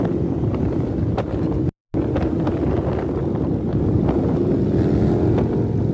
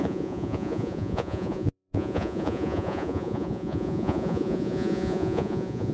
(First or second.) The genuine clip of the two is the first